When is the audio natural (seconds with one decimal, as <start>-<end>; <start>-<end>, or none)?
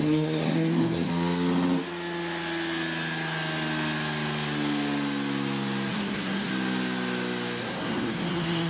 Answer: 1.1-5.9; 6.5-7.6